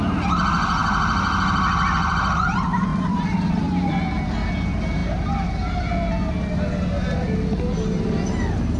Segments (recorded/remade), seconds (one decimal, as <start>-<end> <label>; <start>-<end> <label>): 0.0-8.8 recorded